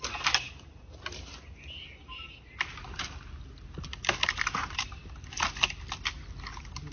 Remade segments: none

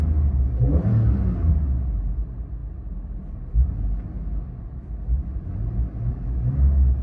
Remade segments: 0.9-1.5

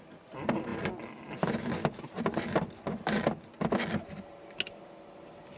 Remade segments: none

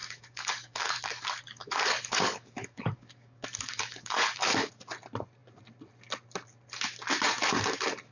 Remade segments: 0.0-4.7

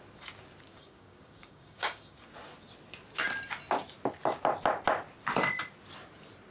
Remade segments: 0.7-2.3

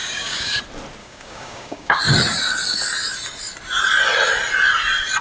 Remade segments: 0.0-0.6; 1.0-2.0

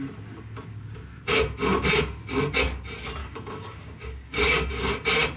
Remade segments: 3.2-4.9

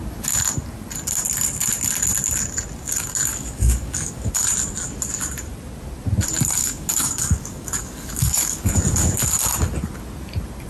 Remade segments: 3.3-4.3; 6.6-8.7